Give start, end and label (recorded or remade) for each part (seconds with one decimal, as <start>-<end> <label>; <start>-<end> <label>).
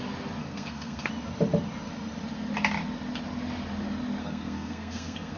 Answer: 0.0-0.4 recorded; 0.4-1.1 remade; 1.1-4.2 recorded; 4.2-5.4 remade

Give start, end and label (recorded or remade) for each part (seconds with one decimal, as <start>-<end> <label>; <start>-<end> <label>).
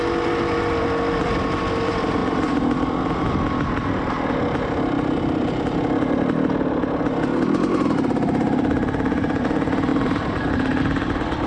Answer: 0.0-9.9 recorded; 9.9-10.8 remade; 10.8-11.5 recorded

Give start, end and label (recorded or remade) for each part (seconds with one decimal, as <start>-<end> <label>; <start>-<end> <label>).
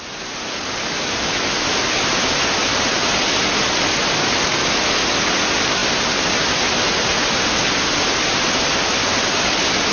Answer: 0.0-9.9 recorded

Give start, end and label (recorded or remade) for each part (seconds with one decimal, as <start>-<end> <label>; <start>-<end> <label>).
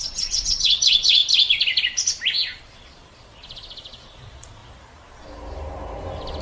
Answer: 0.0-1.2 remade; 1.2-2.6 recorded; 2.6-4.6 remade; 4.6-6.4 recorded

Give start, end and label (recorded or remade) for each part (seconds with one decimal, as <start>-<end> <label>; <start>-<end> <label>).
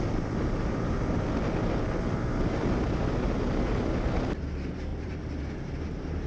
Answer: 0.0-4.9 recorded; 4.9-6.3 remade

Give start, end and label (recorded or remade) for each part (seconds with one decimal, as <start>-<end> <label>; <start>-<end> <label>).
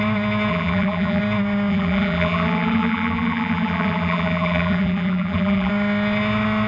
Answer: 0.0-0.5 recorded; 0.5-1.2 remade; 1.2-1.7 recorded; 1.7-5.7 remade; 5.7-6.7 recorded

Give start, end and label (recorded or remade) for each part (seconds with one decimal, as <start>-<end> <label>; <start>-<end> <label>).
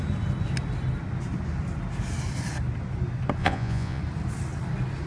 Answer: 0.0-3.4 recorded; 3.4-4.0 remade; 4.0-5.1 recorded